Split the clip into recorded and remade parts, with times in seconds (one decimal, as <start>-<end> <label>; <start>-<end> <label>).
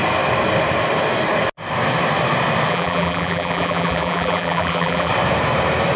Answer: 0.0-2.7 recorded; 2.7-5.1 remade; 5.1-6.0 recorded